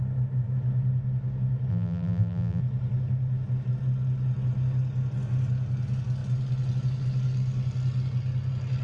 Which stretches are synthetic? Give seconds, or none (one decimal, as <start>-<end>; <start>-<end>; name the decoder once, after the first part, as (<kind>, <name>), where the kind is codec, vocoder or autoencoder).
1.7-2.6 (vocoder, BigVGAN v2)